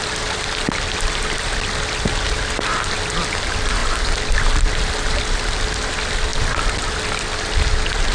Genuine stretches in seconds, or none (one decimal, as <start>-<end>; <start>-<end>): 0.0-3.8; 5.2-8.1